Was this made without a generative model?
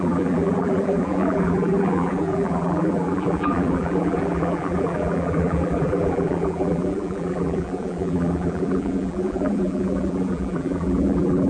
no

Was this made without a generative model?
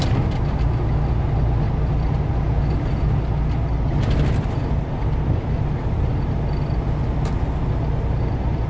yes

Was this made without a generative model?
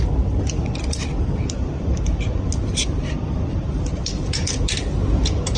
yes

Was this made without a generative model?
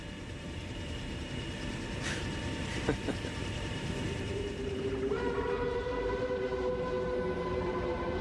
no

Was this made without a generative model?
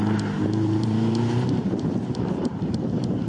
no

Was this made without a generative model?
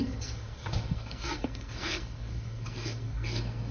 no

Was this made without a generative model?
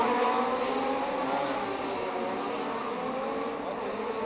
yes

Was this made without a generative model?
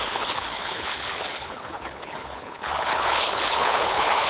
no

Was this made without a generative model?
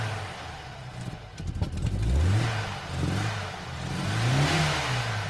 yes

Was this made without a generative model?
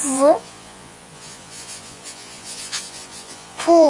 no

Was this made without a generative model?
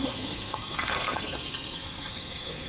no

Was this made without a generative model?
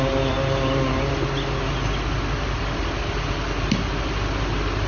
yes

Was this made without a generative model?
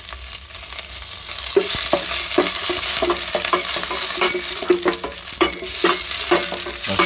yes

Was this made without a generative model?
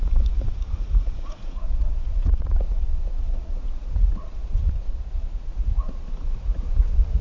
no